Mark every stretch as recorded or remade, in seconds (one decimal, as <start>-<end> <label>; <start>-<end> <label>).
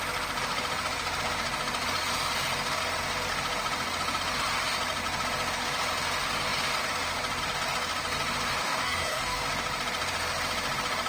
0.0-8.6 recorded; 8.6-9.4 remade; 9.4-11.1 recorded